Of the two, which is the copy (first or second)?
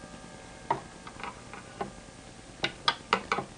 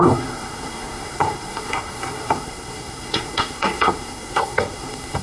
second